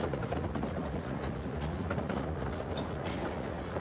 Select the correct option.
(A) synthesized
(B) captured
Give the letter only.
A